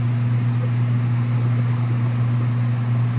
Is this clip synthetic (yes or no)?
no